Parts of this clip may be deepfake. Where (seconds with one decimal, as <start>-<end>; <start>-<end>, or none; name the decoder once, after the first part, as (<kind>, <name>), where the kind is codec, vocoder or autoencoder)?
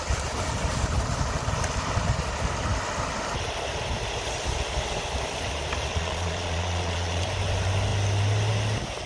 5.9-7.2 (vocoder, Vocos)